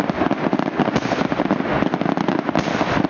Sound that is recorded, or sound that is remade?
recorded